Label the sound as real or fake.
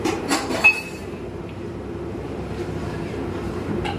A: fake